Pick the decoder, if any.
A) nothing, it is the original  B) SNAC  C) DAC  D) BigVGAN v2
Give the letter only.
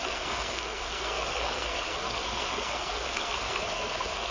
B